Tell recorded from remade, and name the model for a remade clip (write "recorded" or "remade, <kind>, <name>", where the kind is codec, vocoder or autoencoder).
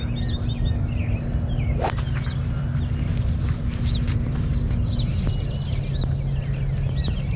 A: recorded